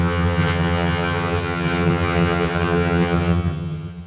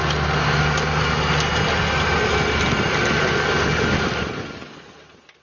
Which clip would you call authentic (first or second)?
second